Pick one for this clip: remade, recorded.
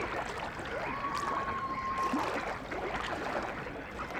recorded